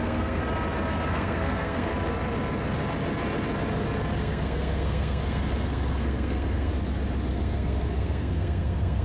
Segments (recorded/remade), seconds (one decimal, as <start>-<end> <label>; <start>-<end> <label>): 0.0-0.4 remade; 0.4-1.1 recorded; 1.1-1.9 remade; 1.9-4.2 recorded; 4.2-6.7 remade; 6.7-7.3 recorded; 7.3-9.0 remade